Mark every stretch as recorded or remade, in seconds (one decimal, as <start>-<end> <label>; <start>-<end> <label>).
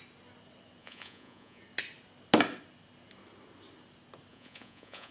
0.0-0.8 recorded; 0.8-1.6 remade; 1.6-4.3 recorded; 4.3-5.1 remade